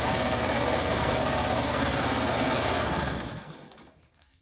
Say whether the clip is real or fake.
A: fake